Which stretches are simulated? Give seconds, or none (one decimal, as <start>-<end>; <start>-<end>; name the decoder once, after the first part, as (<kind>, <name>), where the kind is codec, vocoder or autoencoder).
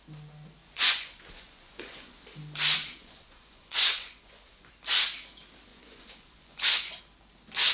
0.6-2.2 (vocoder, Vocos); 3.0-4.7; 5.7-7.0